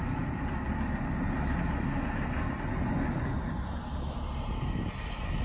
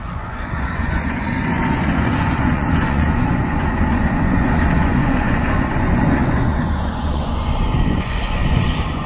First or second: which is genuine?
first